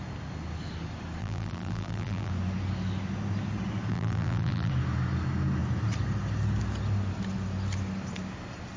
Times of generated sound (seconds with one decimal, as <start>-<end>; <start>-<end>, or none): 1.2-2.3; 3.9-4.7